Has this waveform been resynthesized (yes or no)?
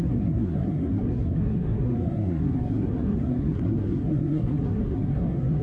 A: yes